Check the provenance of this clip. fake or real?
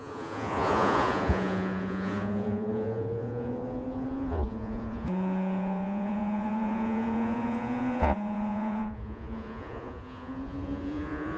fake